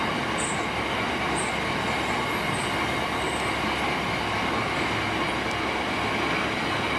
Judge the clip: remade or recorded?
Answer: recorded